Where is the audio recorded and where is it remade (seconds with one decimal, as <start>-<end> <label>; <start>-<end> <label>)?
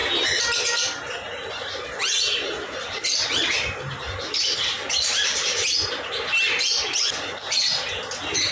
0.0-8.5 recorded